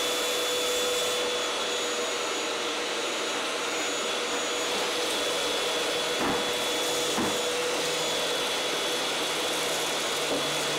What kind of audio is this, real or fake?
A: real